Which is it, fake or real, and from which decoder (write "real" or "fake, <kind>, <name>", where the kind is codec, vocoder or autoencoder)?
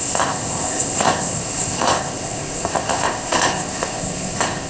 fake, codec, ZipCodec